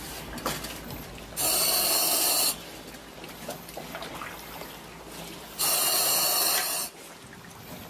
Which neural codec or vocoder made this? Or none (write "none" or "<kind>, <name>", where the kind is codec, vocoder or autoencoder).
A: none